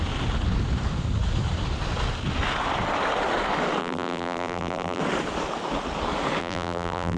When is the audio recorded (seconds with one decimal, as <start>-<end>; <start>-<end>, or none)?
0.0-3.8; 5.0-6.4

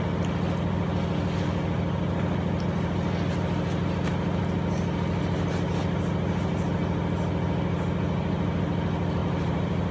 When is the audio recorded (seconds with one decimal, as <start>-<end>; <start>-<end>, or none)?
0.0-9.2